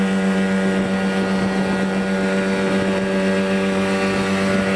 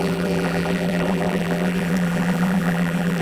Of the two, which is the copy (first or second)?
second